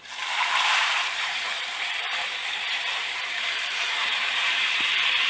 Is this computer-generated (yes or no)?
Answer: yes